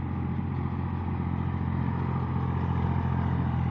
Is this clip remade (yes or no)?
no